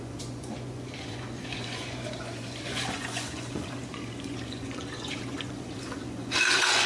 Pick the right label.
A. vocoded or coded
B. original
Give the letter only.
A